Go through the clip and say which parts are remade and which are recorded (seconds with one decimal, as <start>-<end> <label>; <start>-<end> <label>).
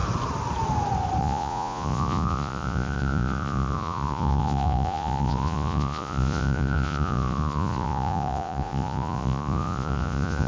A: 0.0-1.2 recorded; 1.2-10.5 remade